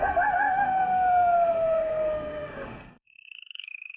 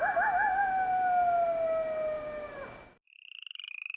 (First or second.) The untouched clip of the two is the second